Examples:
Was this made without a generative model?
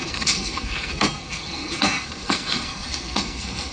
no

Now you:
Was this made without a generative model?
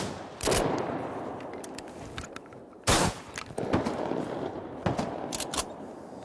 yes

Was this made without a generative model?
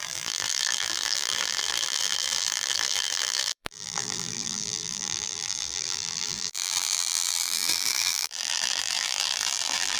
no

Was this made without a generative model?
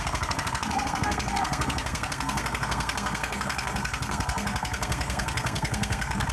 no